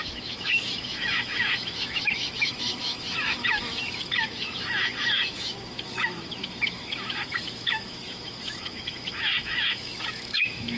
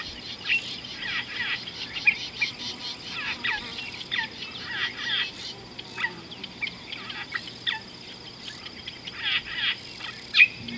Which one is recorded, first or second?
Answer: second